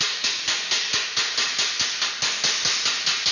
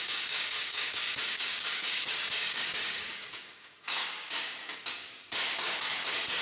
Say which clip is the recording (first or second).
first